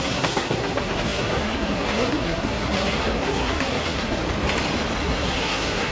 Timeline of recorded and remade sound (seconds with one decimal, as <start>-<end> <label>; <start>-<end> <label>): 0.0-4.2 remade; 4.2-5.0 recorded; 5.0-5.9 remade